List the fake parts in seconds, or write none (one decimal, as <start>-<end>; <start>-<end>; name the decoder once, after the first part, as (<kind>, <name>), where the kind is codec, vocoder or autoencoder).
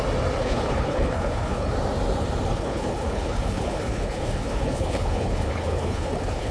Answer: 0.4-1.7 (codec, HILCodec); 2.5-6.5